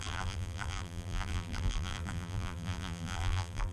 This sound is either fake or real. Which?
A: fake